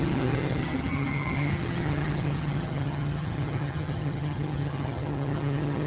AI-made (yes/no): yes